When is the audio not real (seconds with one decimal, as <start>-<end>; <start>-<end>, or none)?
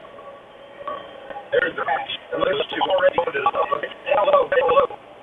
0.0-1.8; 4.0-4.8